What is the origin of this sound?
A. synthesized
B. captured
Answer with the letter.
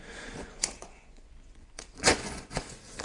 A